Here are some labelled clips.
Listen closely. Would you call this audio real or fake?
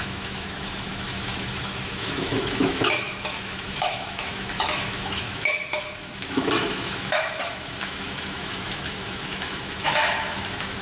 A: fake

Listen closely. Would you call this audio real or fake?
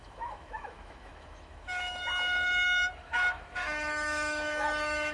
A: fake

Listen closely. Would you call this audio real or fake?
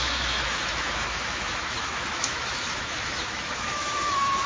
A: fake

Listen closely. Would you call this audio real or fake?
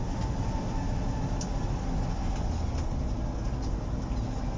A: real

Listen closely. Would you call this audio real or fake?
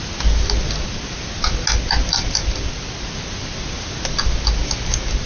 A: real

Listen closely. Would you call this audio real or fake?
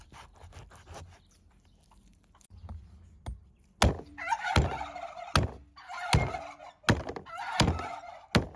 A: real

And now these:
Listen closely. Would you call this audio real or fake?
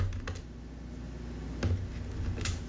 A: real